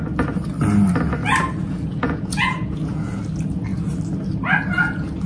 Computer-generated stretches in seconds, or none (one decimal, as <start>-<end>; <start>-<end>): 1.6-3.2

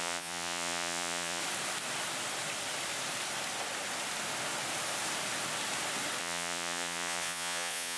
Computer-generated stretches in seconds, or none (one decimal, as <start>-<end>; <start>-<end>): 0.0-1.4; 6.2-8.0

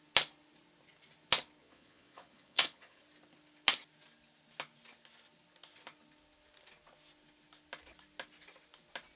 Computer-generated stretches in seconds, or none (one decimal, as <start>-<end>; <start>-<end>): 1.6-3.0

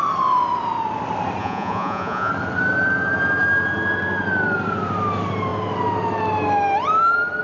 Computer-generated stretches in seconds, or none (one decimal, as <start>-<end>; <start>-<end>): 1.4-2.3